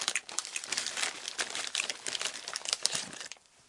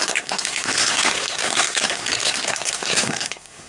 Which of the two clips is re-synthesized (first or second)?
second